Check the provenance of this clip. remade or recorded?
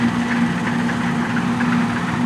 recorded